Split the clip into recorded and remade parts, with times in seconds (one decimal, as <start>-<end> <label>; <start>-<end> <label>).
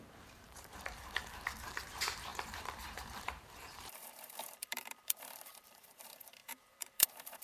0.0-7.4 remade